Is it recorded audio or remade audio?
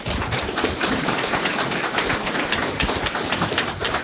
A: remade